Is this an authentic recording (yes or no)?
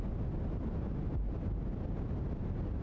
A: yes